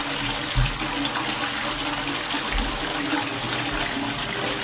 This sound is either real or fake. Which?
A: real